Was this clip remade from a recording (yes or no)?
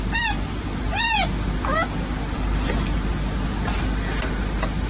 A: no